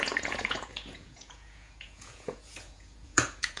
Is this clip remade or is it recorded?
remade